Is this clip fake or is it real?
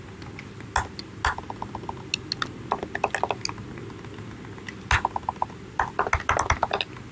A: real